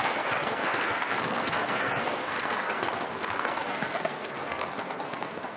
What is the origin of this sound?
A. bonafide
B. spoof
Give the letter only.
B